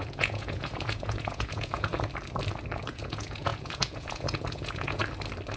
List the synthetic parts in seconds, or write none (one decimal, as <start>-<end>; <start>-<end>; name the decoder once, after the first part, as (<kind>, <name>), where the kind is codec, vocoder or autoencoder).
0.0-1.9 (vocoder, Vocos); 2.8-5.0